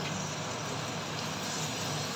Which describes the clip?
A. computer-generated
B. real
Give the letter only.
B